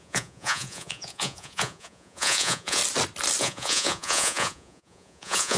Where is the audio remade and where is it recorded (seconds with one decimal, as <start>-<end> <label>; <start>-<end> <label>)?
0.0-2.8 remade; 2.8-3.4 recorded; 3.4-5.6 remade